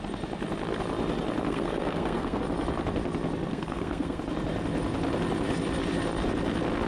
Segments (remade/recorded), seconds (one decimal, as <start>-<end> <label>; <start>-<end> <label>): 0.0-1.5 recorded; 1.5-2.4 remade; 2.4-3.5 recorded; 3.5-4.2 remade; 4.2-6.9 recorded